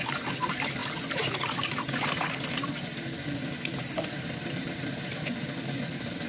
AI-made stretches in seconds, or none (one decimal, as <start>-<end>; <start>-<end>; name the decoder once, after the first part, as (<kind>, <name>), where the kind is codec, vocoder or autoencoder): none